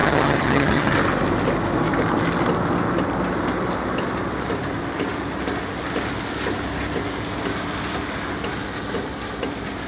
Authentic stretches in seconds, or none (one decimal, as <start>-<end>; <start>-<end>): 0.9-9.9